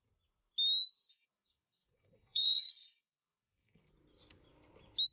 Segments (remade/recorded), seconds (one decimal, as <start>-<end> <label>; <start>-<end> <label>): 0.0-1.1 recorded; 1.1-3.9 remade; 3.9-5.1 recorded